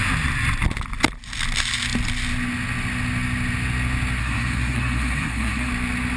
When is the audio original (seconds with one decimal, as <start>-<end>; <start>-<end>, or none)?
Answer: 0.0-4.2; 5.7-6.2

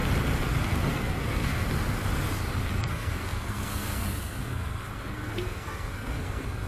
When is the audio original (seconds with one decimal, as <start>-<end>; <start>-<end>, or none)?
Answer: 0.0-0.9; 1.6-2.8

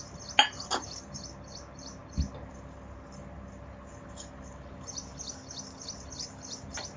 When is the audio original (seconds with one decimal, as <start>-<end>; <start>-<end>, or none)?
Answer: 0.0-7.0